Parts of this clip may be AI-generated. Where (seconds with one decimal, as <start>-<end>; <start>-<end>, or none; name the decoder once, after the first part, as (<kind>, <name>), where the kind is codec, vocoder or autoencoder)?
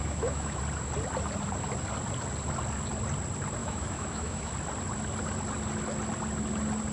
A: 0.0-0.6 (autoencoder, DAC-VAE); 3.6-4.5